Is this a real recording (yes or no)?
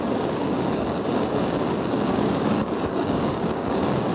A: no